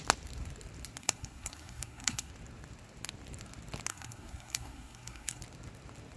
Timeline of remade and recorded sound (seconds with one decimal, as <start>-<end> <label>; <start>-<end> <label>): 0.0-1.0 recorded; 1.0-2.3 remade; 2.3-3.9 recorded; 3.9-5.4 remade; 5.4-6.2 recorded